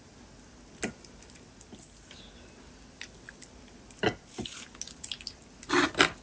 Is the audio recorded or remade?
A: recorded